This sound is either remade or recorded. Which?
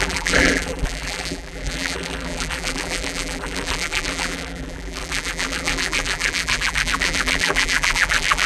remade